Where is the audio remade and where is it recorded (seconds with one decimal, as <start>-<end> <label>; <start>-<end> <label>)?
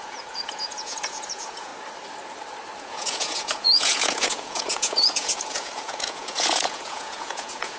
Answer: 0.0-1.7 remade; 1.7-2.8 recorded; 2.8-7.8 remade